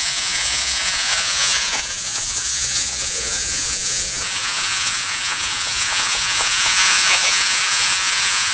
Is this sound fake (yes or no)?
yes